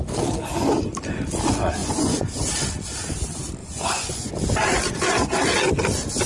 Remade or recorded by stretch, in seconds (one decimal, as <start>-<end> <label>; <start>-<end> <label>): 0.0-1.8 recorded; 1.8-2.4 remade; 2.4-3.6 recorded; 3.6-4.3 remade; 4.3-6.3 recorded